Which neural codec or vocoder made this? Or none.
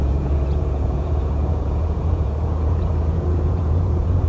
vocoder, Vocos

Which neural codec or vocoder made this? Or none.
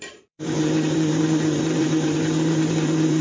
vocoder, BigVGAN v2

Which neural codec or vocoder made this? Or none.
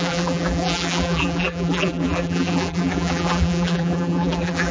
vocoder, BigVGAN v2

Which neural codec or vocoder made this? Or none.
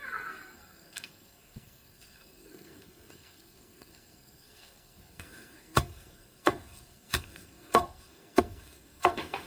codec, SNAC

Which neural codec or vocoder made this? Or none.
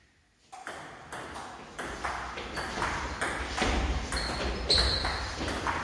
none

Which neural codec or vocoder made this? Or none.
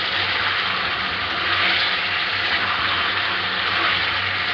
none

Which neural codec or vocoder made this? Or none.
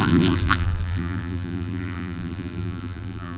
vocoder, BigVGAN v2